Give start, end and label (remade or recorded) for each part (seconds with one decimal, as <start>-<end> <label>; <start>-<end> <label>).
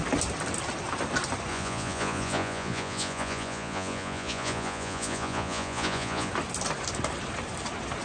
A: 0.0-1.5 recorded; 1.5-6.3 remade; 6.3-8.0 recorded